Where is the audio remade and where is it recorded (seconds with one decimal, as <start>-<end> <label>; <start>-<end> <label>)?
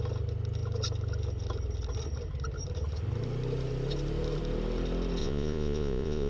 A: 0.0-5.2 recorded; 5.2-6.3 remade